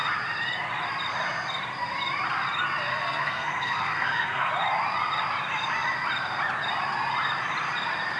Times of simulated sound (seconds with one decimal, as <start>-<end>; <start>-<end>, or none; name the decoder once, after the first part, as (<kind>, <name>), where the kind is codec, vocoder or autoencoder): 2.9-4.5 (codec, SNAC)